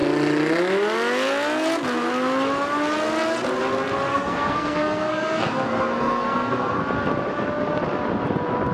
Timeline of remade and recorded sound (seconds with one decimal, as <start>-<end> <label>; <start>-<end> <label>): 0.0-4.1 recorded; 4.1-6.8 remade; 6.8-8.7 recorded